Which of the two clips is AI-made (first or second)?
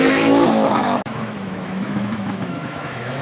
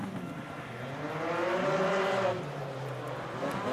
first